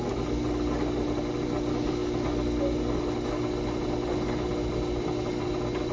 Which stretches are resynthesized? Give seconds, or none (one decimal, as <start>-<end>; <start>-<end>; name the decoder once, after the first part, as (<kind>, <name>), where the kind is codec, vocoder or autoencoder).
none